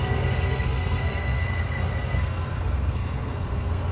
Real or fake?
fake